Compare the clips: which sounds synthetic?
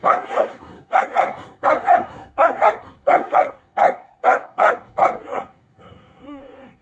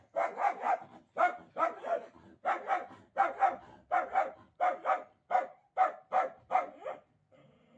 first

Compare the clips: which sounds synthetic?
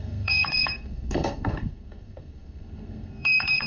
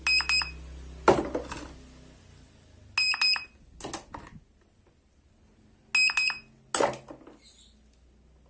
first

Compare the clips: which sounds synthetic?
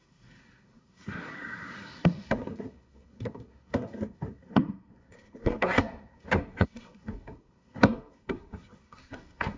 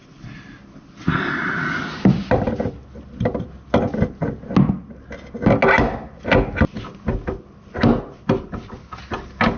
first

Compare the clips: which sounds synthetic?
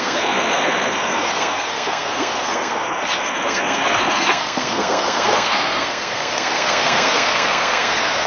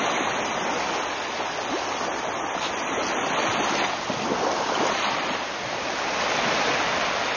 first